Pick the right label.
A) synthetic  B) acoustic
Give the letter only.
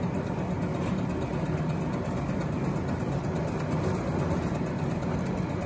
B